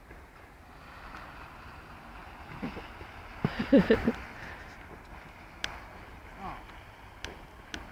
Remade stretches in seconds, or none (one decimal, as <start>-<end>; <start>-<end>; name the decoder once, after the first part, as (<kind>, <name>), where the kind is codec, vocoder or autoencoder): none